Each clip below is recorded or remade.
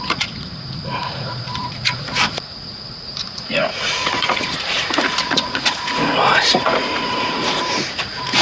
remade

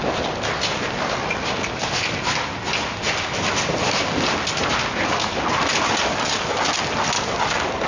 recorded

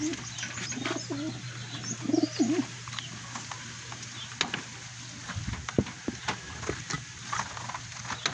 recorded